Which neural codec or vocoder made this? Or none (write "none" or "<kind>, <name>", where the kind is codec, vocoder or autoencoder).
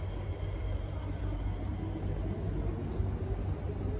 none